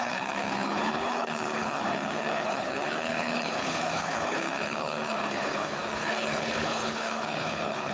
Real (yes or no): no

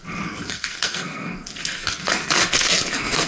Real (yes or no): no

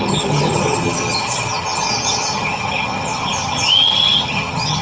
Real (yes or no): no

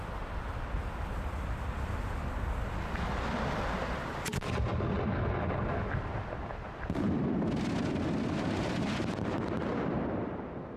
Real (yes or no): yes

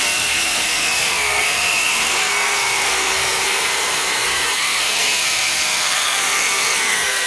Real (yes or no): no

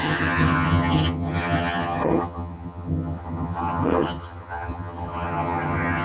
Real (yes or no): no